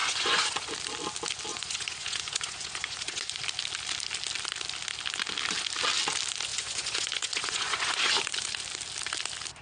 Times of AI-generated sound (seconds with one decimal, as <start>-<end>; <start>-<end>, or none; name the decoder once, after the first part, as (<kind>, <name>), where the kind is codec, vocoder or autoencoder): 0.0-0.7 (vocoder, Vocos); 1.5-3.4; 6.5-8.0